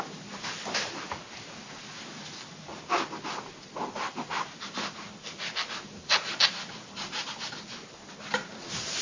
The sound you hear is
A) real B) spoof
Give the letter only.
A